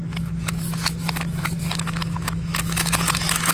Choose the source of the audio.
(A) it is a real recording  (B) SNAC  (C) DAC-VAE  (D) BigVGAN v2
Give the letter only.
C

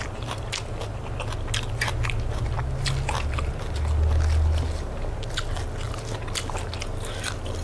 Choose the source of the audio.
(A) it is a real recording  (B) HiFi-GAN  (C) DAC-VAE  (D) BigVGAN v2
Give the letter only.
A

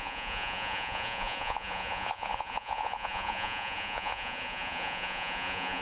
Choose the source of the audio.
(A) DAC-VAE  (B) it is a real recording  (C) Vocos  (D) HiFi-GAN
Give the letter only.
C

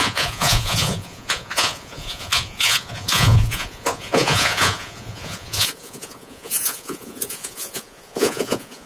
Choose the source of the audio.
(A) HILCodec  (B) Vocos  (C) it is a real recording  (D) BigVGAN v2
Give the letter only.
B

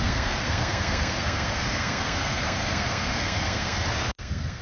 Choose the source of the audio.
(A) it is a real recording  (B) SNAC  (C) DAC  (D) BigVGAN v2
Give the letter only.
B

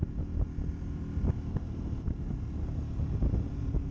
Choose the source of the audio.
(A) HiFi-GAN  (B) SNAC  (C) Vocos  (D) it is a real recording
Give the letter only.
D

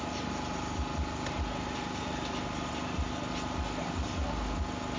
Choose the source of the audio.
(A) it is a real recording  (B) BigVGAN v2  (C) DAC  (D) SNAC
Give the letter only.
A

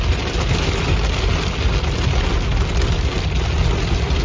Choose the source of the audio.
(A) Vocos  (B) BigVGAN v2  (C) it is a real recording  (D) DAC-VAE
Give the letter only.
C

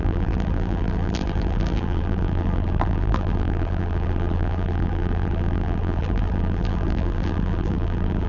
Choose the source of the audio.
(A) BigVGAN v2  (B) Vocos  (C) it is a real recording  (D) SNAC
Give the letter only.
A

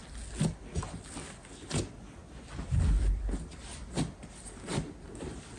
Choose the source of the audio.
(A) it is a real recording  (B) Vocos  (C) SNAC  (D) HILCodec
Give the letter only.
A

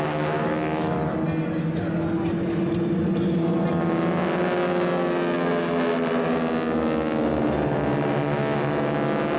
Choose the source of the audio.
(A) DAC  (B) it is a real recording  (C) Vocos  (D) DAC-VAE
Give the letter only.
B